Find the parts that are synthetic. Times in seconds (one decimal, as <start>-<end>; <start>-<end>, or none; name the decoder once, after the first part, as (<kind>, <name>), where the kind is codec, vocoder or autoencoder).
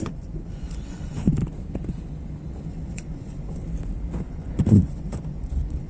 0.0-1.4 (vocoder, Vocos); 2.7-3.6; 4.2-5.9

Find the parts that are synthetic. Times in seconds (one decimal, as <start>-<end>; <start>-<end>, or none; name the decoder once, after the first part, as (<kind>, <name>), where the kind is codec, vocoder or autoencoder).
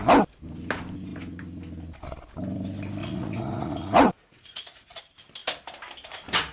3.0-5.0 (vocoder, Vocos)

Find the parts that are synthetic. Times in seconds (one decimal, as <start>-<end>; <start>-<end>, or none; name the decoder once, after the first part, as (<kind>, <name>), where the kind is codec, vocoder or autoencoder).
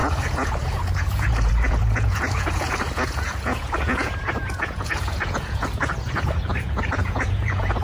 0.0-7.8 (vocoder, Vocos)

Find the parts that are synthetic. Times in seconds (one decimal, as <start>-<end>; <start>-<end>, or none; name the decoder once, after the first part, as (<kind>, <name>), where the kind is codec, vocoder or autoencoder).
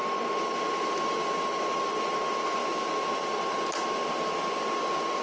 none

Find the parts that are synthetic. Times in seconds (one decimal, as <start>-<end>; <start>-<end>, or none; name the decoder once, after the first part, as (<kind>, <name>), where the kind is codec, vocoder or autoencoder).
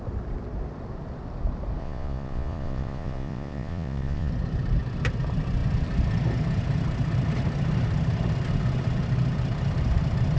1.8-4.3 (vocoder, Vocos)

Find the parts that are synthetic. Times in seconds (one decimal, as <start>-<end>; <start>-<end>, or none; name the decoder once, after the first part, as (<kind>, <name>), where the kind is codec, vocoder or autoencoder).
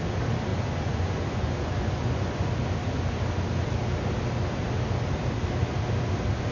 0.5-2.5 (vocoder, Vocos)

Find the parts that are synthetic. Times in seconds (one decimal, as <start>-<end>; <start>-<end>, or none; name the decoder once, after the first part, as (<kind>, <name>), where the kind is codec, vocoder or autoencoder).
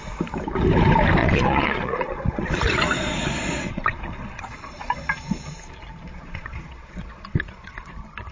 1.2-5.5 (vocoder, Vocos); 6.1-7.9